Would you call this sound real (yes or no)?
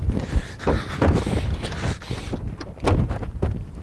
yes